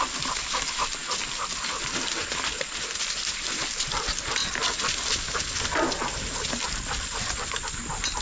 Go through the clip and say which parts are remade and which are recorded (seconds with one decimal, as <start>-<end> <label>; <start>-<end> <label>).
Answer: 0.0-8.2 recorded